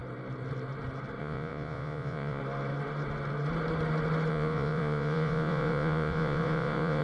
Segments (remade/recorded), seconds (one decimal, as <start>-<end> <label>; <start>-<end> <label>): 0.0-1.2 recorded; 1.2-2.4 remade; 2.4-4.3 recorded; 4.3-7.0 remade